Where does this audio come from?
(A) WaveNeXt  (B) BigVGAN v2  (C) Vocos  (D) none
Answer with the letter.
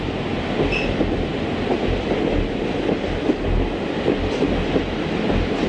D